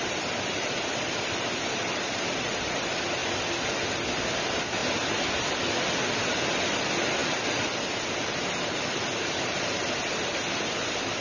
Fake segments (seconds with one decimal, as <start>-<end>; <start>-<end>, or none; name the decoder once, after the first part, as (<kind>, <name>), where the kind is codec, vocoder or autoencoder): 0.0-3.2 (vocoder, BigVGAN v2); 4.2-4.8; 5.5-11.2